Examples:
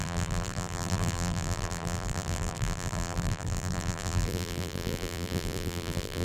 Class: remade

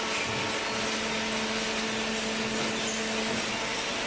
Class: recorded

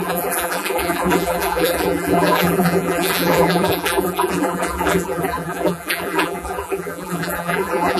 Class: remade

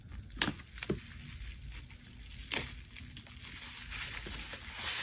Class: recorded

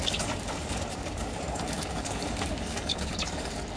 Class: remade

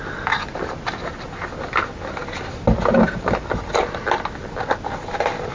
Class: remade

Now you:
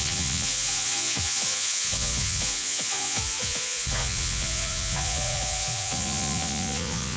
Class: remade